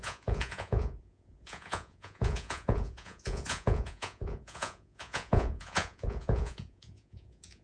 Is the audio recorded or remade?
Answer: remade